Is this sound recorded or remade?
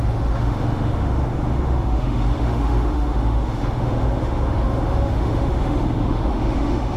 remade